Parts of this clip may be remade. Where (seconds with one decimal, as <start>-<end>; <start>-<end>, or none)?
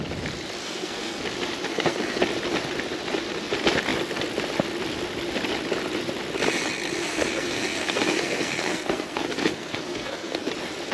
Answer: 0.6-1.2; 1.7-2.2; 7.0-10.5